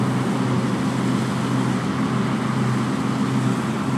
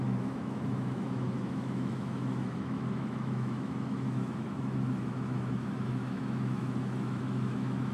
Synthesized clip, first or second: second